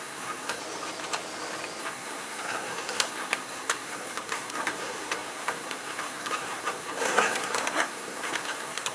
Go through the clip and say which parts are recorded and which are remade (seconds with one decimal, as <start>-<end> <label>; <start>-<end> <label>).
0.0-0.6 remade; 0.6-1.8 recorded; 1.8-8.9 remade